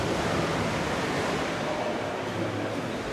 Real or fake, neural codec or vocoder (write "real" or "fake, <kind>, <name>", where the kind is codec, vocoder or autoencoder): real